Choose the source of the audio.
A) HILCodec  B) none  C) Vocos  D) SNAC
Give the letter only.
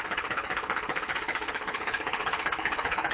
A